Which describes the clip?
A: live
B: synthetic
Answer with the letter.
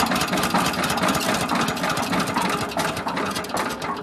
A